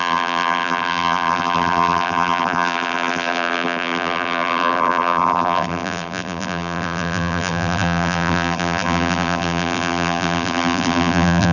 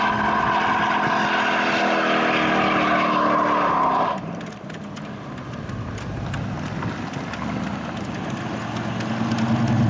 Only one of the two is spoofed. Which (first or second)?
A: first